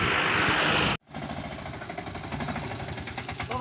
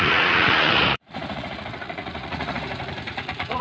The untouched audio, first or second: first